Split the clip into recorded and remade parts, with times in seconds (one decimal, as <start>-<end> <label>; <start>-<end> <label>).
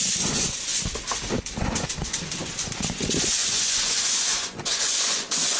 0.0-0.7 remade; 0.7-1.6 recorded; 1.6-5.6 remade